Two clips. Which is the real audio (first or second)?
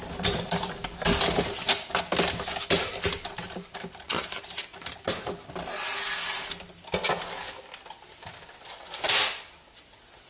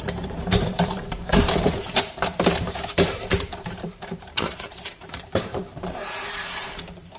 first